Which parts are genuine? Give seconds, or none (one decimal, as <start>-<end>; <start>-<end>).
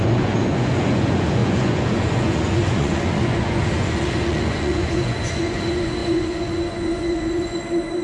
none